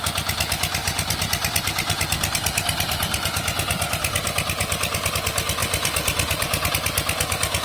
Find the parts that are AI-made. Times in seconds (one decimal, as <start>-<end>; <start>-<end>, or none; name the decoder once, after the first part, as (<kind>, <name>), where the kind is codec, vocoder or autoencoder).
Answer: 0.8-5.1 (vocoder, BigVGAN v2); 5.6-6.7

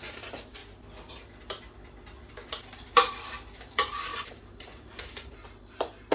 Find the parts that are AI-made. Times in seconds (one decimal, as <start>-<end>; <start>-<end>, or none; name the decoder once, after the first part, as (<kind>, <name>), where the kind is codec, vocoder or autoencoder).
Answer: 0.0-0.6 (vocoder, BigVGAN v2); 2.3-6.1

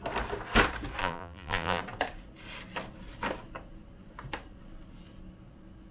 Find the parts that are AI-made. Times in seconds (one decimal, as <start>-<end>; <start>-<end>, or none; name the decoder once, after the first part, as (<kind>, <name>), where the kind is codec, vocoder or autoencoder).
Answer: 1.0-1.8 (vocoder, BigVGAN v2)